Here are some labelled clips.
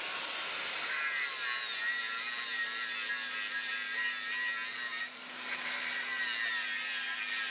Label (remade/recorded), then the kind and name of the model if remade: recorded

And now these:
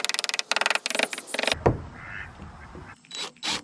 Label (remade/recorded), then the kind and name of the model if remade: recorded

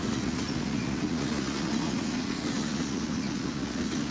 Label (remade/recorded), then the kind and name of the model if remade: remade, vocoder, Vocos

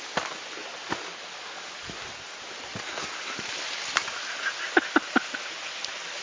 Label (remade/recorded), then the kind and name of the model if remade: recorded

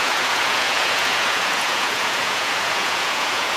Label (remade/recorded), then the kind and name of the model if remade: remade, vocoder, Vocos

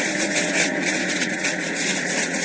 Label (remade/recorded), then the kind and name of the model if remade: remade, vocoder, Vocos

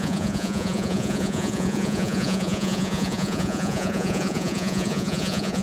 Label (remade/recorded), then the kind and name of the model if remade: remade, vocoder, Vocos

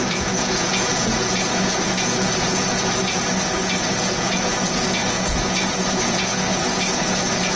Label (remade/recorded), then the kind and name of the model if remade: remade, vocoder, Vocos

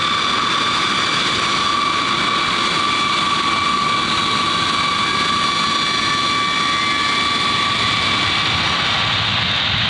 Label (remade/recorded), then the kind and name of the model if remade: recorded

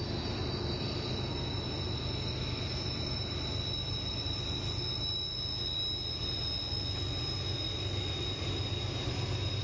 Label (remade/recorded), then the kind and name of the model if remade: recorded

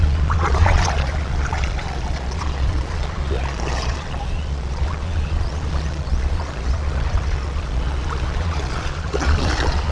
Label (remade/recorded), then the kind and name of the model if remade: remade, vocoder, Vocos